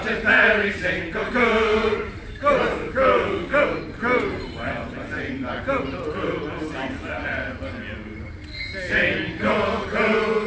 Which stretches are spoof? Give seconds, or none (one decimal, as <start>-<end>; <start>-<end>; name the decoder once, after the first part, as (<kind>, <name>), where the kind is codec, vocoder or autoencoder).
2.7-3.8 (codec, DAC)